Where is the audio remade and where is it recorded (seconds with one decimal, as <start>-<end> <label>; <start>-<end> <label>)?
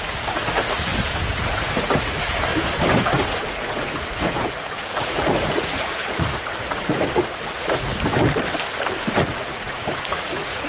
0.0-0.9 remade; 0.9-1.8 recorded; 1.8-2.5 remade; 2.5-3.4 recorded; 3.4-7.9 remade; 7.9-9.1 recorded; 9.1-10.7 remade